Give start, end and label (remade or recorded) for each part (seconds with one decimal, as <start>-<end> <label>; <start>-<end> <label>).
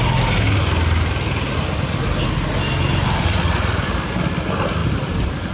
0.0-5.5 recorded